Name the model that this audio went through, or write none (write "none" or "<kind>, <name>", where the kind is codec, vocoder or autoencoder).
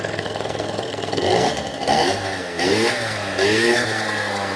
codec, SNAC